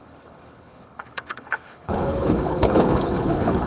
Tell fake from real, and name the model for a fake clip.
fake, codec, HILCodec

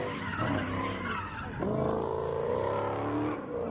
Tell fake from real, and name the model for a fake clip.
real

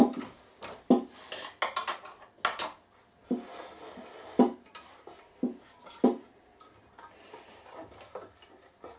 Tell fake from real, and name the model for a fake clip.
real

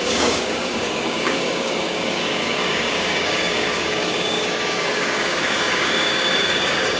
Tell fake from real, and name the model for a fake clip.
fake, codec, DAC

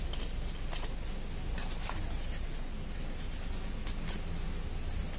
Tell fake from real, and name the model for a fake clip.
real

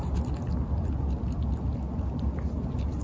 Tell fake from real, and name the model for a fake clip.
real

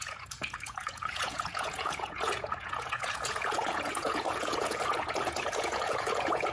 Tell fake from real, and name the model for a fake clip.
fake, vocoder, Vocos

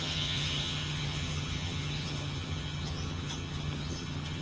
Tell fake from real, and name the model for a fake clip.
fake, vocoder, HiFi-GAN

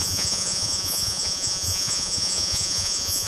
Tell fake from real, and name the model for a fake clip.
fake, vocoder, Vocos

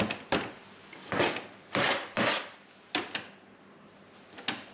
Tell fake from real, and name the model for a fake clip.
real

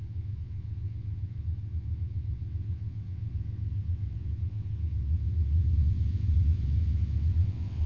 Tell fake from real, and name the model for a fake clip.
fake, vocoder, WaveNeXt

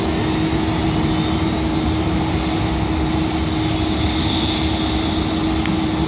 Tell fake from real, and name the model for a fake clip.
real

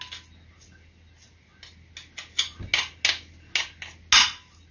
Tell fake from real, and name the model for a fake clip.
real